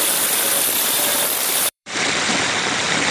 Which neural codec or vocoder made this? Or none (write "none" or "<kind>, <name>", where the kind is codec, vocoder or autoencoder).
vocoder, BigVGAN v2